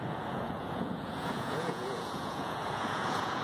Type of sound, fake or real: fake